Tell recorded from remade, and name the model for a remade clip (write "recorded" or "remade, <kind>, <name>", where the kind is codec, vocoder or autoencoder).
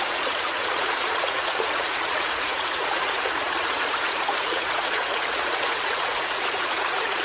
remade, vocoder, Vocos